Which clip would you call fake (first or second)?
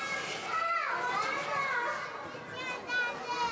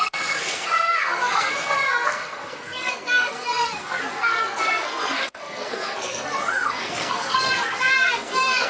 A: second